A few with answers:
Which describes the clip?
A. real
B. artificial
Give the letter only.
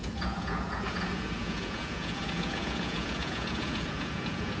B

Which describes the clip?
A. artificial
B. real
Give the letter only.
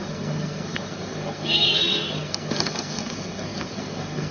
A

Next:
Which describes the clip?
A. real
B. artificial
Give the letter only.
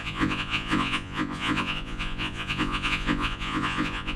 B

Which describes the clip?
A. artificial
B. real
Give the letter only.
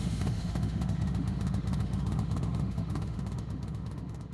A